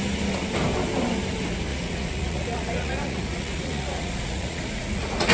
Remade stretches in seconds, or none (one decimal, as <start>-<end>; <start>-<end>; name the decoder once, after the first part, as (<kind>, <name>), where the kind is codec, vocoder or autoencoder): 1.7-5.3 (vocoder, Vocos)